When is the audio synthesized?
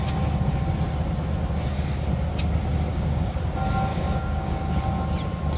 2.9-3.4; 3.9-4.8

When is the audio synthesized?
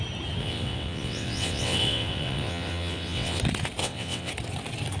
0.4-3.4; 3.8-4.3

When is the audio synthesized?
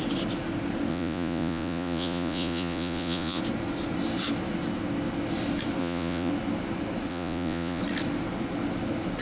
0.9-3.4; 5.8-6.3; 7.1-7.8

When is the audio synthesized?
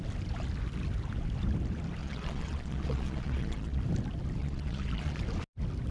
2.0-3.8; 4.4-5.2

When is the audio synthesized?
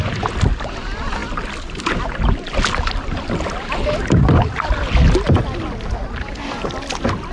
none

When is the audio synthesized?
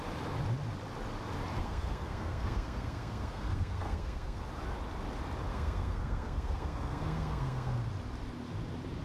1.6-4.4; 5.5-7.9